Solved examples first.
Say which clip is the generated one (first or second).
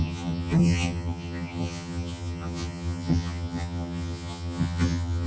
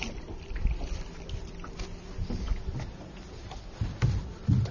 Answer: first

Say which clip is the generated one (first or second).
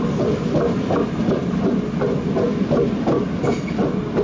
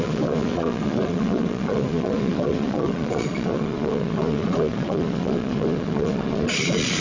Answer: second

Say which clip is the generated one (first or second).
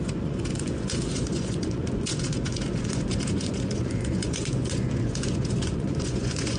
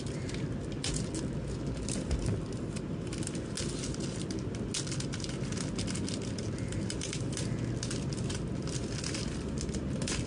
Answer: first